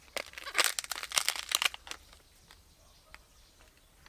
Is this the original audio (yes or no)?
yes